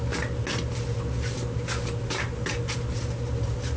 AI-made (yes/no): no